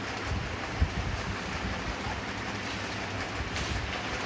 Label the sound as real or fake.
real